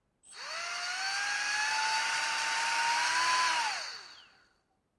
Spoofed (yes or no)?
no